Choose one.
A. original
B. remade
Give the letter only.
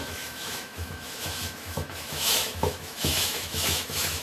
B